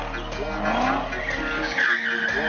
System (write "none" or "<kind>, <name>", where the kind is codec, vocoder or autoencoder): none